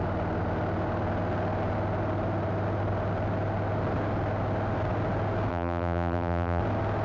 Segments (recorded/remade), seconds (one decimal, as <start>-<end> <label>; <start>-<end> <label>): 0.0-5.5 recorded; 5.5-6.6 remade; 6.6-7.0 recorded